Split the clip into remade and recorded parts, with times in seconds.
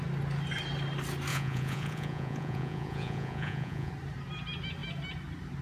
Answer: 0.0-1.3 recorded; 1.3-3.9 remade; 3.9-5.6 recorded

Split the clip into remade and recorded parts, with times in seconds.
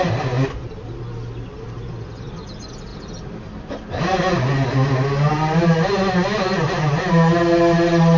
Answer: 0.0-8.2 recorded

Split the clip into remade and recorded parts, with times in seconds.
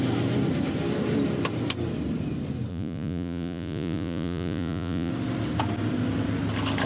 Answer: 0.0-2.7 recorded; 2.7-5.1 remade; 5.1-6.9 recorded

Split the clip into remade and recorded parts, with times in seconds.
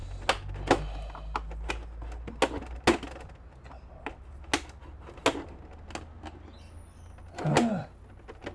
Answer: 0.0-8.5 recorded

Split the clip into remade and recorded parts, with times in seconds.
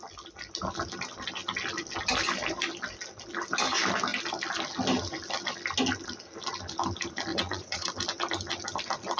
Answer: 0.0-7.3 recorded; 7.3-7.9 remade; 7.9-9.2 recorded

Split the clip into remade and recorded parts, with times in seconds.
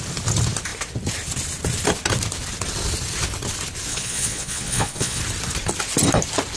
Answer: 0.0-3.9 recorded; 3.9-5.2 remade; 5.2-6.6 recorded